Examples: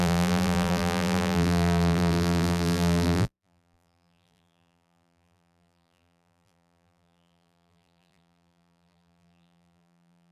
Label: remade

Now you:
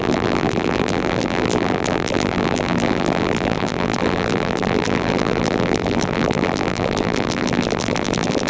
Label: remade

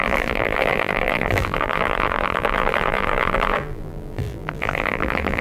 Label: remade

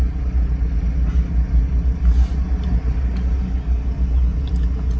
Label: recorded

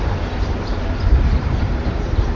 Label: remade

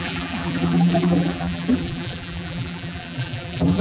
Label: remade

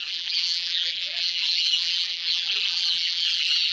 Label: remade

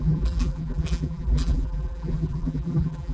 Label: remade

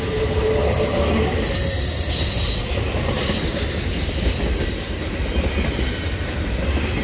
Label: recorded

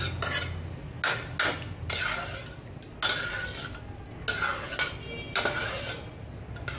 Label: recorded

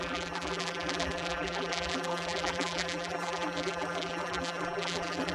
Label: remade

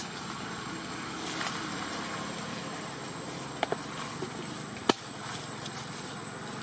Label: recorded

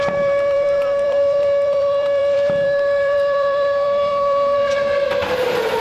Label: remade